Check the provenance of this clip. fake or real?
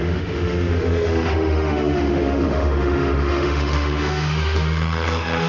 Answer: fake